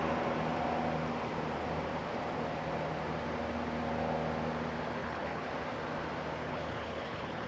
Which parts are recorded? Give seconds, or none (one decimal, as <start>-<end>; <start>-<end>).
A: 0.0-5.0; 5.5-6.4